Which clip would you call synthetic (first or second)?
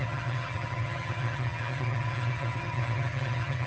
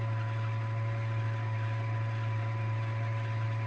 first